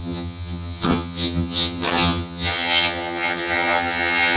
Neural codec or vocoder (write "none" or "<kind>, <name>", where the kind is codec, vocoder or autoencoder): vocoder, HiFi-GAN